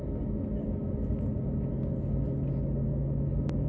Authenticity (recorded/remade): recorded